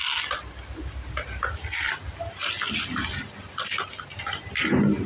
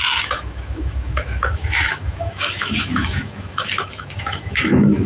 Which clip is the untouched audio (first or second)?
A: first